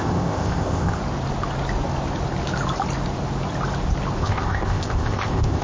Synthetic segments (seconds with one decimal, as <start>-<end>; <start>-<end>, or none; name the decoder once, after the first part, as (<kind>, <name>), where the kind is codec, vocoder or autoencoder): 0.0-1.0 (codec, ZipCodec); 4.2-5.6